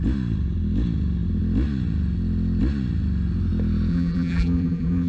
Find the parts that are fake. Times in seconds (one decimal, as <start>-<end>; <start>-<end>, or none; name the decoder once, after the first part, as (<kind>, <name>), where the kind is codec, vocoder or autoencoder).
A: 3.9-5.1 (vocoder, BigVGAN v2)